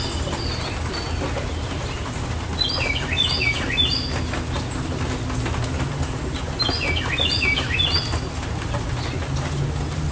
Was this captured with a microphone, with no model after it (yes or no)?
yes